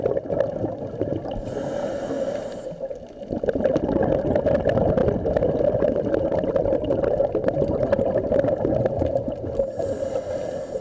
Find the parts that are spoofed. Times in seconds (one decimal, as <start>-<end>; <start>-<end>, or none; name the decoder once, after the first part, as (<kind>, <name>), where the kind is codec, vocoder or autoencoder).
none